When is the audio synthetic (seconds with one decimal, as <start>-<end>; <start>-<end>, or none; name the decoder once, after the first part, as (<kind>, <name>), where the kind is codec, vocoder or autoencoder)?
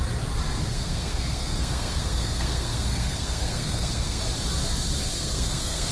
0.7-4.2 (codec, SNAC); 5.1-5.9